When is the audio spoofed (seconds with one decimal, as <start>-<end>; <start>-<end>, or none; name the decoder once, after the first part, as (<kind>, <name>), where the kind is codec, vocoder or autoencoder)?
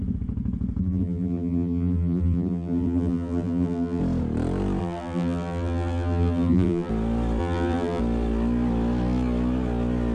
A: 0.8-4.0 (vocoder, BigVGAN v2); 4.8-6.9; 7.4-8.0